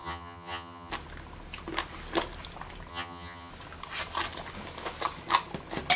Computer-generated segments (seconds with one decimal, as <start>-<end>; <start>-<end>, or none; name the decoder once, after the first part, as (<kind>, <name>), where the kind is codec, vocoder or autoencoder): 0.0-0.9 (vocoder, HiFi-GAN); 2.9-3.5